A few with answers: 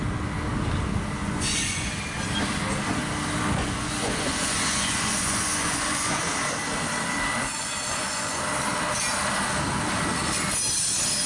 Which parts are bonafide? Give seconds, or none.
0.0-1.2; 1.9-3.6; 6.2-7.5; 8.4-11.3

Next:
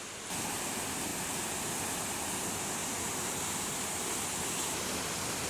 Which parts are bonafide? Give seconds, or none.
0.0-5.5

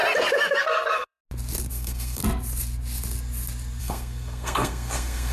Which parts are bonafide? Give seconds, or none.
0.0-0.6; 1.2-1.7; 2.2-3.8